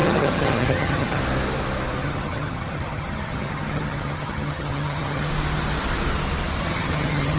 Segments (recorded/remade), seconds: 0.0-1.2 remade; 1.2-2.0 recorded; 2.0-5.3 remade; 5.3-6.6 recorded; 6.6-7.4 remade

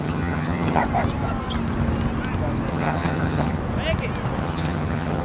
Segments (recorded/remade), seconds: 0.0-0.8 remade; 0.8-2.7 recorded; 2.7-3.6 remade; 3.6-4.4 recorded; 4.4-5.2 remade

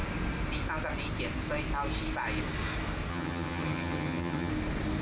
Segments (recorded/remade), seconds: 0.0-3.1 recorded; 3.1-4.5 remade; 4.5-5.0 recorded

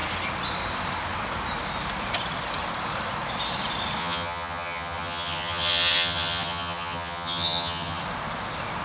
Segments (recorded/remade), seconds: 0.0-4.0 recorded; 4.0-8.0 remade; 8.0-8.8 recorded

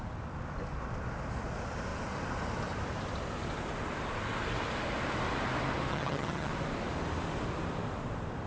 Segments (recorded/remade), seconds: 0.0-5.9 recorded; 5.9-6.5 remade; 6.5-8.5 recorded

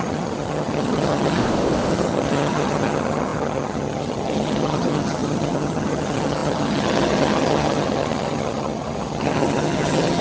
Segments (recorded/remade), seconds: 0.0-1.4 remade; 1.4-1.9 recorded; 1.9-10.2 remade

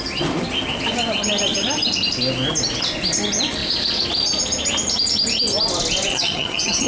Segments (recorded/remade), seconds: 0.0-6.1 recorded; 6.1-6.9 remade

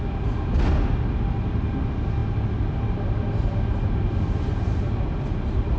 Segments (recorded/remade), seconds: 0.0-5.8 recorded